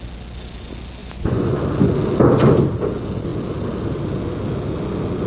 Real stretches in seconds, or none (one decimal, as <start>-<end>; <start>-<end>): 0.0-1.0; 1.6-5.3